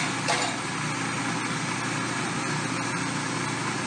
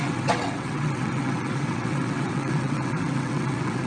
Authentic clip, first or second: first